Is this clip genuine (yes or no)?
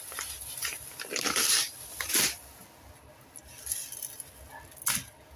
yes